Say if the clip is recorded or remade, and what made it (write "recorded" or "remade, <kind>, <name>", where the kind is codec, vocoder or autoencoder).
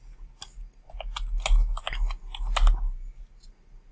recorded